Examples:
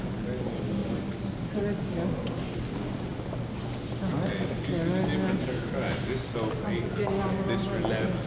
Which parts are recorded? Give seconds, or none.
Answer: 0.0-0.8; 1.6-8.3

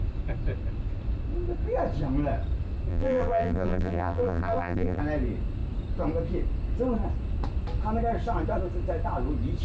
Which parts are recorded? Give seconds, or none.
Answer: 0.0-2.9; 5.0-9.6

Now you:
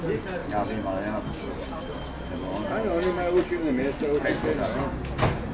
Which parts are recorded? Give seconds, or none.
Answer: 0.0-5.5